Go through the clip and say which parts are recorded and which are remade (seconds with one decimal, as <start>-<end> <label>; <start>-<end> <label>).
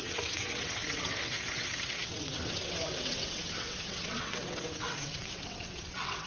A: 0.0-6.3 remade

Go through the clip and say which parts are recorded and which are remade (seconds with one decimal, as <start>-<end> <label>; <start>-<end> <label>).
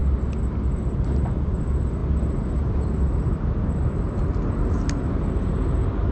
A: 0.0-6.1 recorded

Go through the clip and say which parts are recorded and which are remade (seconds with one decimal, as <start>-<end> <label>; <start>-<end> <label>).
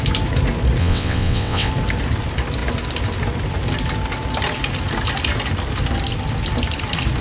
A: 0.0-0.8 recorded; 0.8-1.7 remade; 1.7-7.2 recorded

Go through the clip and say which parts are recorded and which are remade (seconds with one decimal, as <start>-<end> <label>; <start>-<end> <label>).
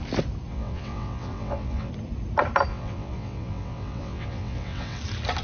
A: 0.0-0.5 recorded; 0.5-1.9 remade; 1.9-2.7 recorded; 2.7-5.0 remade; 5.0-5.4 recorded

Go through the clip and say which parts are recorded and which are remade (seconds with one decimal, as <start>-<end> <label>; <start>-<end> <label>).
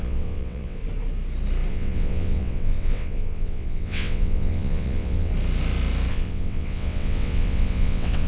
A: 0.0-0.8 remade; 0.8-1.7 recorded; 1.7-5.3 remade; 5.3-6.1 recorded; 6.1-8.3 remade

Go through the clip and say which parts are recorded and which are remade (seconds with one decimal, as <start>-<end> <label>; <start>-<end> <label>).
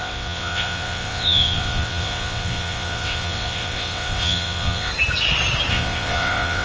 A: 0.0-4.9 remade; 4.9-5.7 recorded; 5.7-6.6 remade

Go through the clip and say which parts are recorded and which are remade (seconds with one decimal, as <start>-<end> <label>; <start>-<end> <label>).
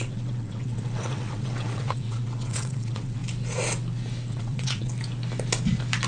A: 0.0-3.2 remade; 3.2-4.3 recorded; 4.3-4.9 remade; 4.9-6.1 recorded